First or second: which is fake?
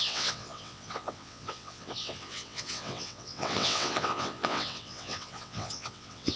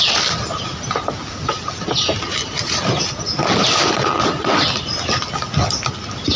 first